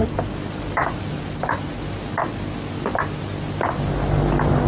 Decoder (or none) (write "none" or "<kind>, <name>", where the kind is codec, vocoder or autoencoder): none